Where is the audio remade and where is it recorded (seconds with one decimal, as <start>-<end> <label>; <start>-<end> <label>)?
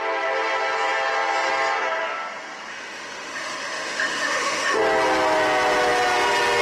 0.0-2.7 recorded; 2.7-4.8 remade; 4.8-6.6 recorded